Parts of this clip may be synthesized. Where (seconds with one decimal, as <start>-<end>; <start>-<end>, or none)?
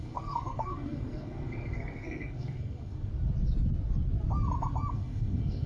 0.0-3.1; 4.9-5.7